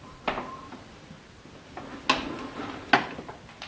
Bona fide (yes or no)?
yes